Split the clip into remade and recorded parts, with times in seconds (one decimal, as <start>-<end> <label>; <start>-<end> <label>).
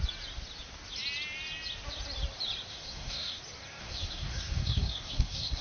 0.0-2.7 recorded; 2.7-3.4 remade; 3.4-3.8 recorded; 3.8-5.6 remade